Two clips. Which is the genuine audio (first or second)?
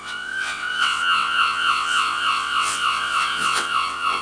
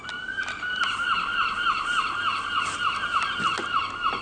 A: second